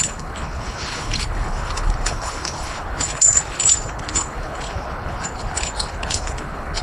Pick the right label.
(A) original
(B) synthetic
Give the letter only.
B